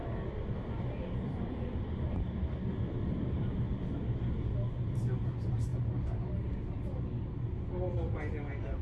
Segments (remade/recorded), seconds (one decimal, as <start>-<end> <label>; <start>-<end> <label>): 0.0-3.7 remade; 3.7-8.8 recorded